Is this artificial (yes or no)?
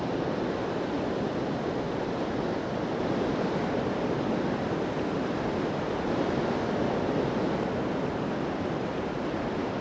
yes